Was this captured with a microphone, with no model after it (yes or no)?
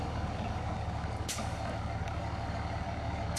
no